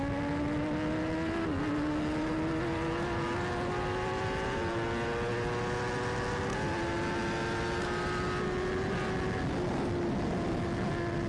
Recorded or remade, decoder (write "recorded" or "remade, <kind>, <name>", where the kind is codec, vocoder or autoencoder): recorded